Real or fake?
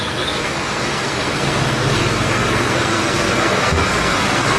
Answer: fake